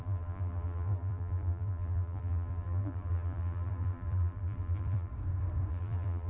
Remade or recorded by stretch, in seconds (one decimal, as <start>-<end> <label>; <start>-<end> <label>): 0.0-5.1 remade; 5.1-5.7 recorded; 5.7-6.3 remade